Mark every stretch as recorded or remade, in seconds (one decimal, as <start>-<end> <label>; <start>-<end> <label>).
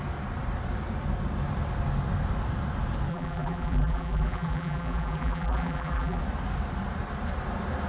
0.0-3.1 recorded; 3.1-6.2 remade; 6.2-7.9 recorded